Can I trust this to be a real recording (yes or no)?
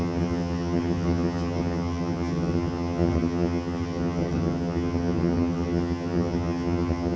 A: no